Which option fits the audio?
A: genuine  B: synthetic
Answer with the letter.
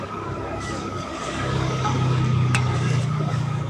B